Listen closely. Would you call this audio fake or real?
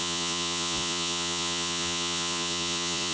fake